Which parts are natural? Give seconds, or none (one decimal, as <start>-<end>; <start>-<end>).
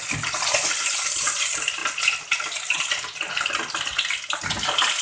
0.0-5.0